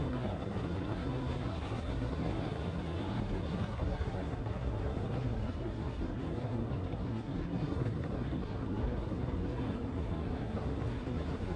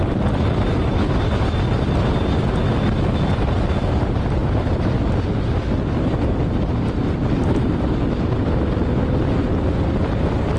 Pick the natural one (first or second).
second